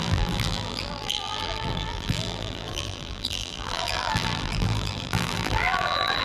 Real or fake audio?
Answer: fake